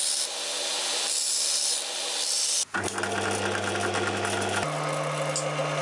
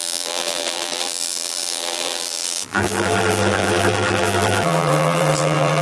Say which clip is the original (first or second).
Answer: first